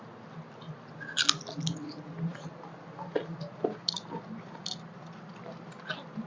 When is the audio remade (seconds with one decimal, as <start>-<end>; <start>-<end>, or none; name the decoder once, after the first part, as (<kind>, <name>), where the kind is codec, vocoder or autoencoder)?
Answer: none

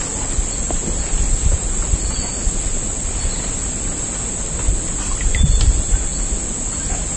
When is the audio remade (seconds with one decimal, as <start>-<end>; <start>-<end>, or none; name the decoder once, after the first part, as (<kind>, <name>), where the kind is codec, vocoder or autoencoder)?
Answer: none

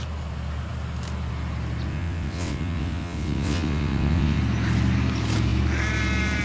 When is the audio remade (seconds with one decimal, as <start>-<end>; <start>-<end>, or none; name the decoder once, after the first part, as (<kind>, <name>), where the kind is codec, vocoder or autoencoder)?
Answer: 1.9-4.4 (vocoder, WaveNeXt)

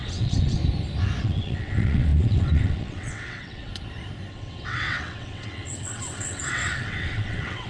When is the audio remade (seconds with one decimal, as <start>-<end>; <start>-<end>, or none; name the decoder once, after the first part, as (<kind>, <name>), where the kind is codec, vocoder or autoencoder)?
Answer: 0.0-0.6 (vocoder, WaveNeXt); 1.2-3.7; 4.3-7.7

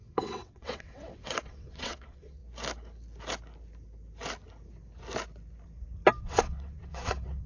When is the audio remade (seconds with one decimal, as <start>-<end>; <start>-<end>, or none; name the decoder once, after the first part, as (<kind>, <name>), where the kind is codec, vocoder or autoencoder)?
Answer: 0.0-2.4 (vocoder, WaveNeXt); 6.2-7.5